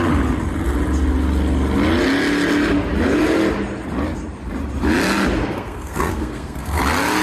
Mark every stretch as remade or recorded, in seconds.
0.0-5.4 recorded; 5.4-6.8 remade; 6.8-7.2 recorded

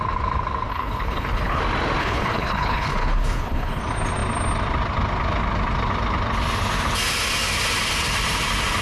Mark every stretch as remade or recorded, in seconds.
0.0-0.7 recorded; 0.7-1.6 remade; 1.6-2.0 recorded; 2.0-3.8 remade; 3.8-8.8 recorded

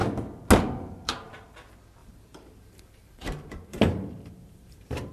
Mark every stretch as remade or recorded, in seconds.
0.0-2.0 recorded; 2.0-5.1 remade

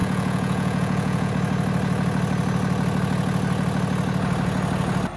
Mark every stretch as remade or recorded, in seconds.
0.0-1.3 remade; 1.3-5.2 recorded

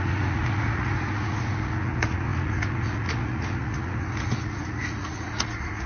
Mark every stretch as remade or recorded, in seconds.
0.0-5.9 remade

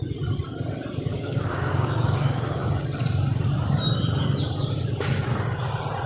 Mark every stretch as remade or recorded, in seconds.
0.0-1.1 recorded; 1.1-2.7 remade; 2.7-6.1 recorded

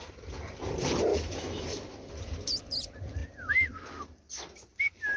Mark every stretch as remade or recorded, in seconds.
0.0-1.1 recorded; 1.1-2.1 remade; 2.1-5.2 recorded